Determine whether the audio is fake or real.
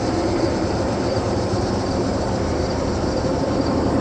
fake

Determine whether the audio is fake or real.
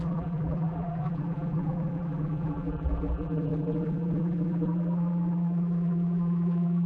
fake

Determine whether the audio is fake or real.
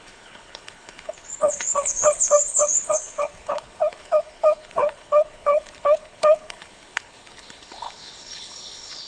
fake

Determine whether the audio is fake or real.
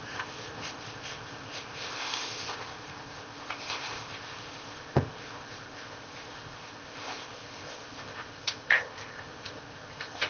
fake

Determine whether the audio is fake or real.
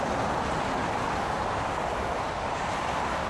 fake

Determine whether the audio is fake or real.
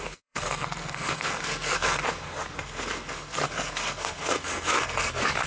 fake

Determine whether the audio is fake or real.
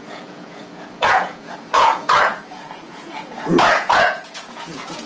fake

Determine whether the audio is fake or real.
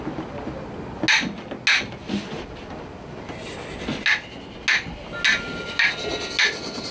real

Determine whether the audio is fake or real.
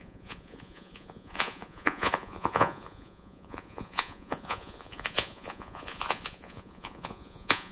fake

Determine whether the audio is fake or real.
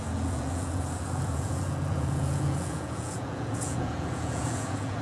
fake